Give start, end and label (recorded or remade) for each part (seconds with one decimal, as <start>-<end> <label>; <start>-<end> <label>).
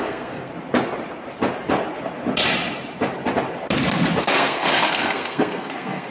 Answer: 0.0-0.5 remade; 0.5-4.2 recorded; 4.2-6.1 remade